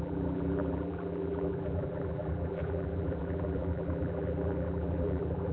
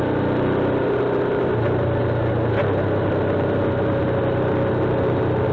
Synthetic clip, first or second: first